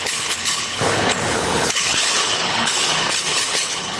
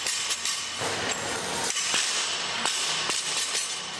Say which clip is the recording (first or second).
second